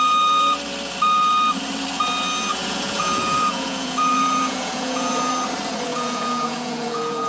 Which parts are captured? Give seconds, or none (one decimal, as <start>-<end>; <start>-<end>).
0.0-2.5; 5.3-5.9

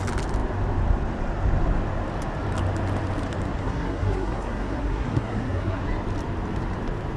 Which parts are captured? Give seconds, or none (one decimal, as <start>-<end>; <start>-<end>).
0.0-3.6; 5.8-7.2

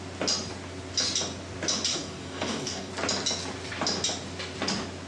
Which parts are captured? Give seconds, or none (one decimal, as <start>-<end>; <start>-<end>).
0.0-1.9; 2.9-5.1

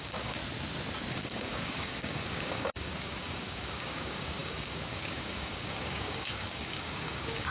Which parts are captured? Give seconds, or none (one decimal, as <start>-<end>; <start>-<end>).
0.4-1.1

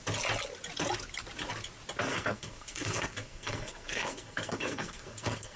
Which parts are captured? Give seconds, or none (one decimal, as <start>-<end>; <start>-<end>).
0.0-2.1

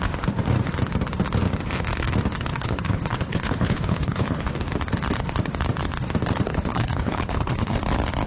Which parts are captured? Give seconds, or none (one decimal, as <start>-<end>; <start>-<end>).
0.0-2.5; 4.5-6.5; 7.8-8.3

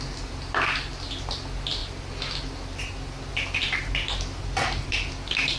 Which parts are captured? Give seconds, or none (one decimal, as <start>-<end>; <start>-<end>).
0.0-5.6